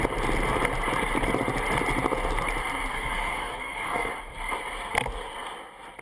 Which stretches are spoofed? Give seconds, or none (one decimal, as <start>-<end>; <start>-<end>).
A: 2.9-4.1